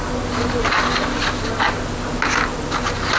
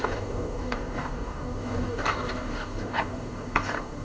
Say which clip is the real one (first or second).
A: first